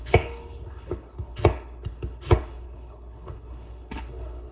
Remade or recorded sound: remade